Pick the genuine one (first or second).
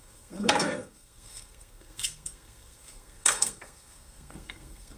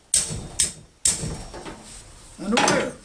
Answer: second